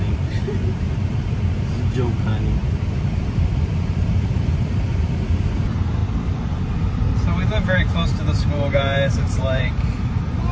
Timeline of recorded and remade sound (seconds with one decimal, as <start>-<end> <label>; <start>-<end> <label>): 0.0-2.3 remade; 2.3-2.9 recorded; 2.9-6.0 remade; 6.0-6.7 recorded; 6.7-10.5 remade